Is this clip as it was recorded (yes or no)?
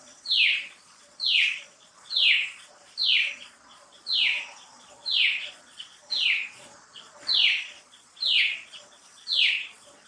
no